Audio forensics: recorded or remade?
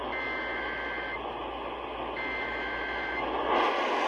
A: recorded